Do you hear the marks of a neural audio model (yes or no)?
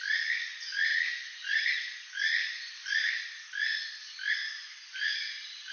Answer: no